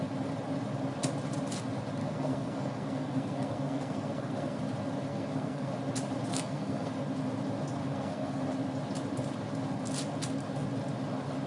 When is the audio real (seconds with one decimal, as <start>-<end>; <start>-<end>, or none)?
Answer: 0.0-2.0; 4.6-5.1; 5.7-6.3; 6.9-7.8; 8.4-11.5